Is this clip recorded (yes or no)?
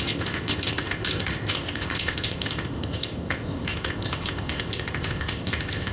no